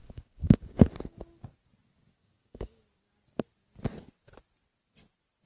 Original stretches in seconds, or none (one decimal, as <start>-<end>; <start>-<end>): 0.8-2.2; 2.8-5.5